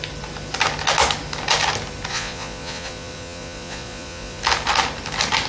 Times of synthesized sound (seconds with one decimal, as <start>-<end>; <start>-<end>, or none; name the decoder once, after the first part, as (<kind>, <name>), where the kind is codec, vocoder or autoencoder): 2.1-4.4 (vocoder, Vocos)